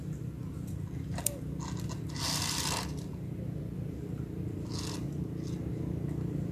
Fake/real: real